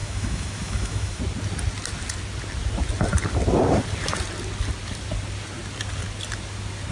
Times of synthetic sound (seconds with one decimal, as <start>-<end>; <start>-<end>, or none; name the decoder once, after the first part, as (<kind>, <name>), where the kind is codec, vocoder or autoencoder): 0.0-1.2 (autoencoder, DAC-VAE)